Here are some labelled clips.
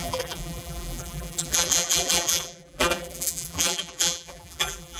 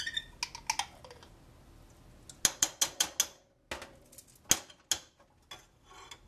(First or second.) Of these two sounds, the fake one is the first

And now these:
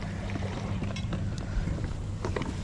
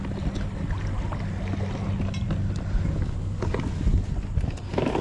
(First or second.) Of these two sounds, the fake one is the first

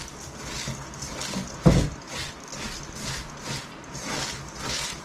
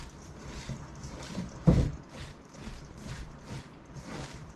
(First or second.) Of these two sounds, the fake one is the second